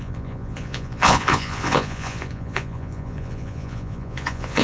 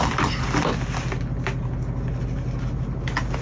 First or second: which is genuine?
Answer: second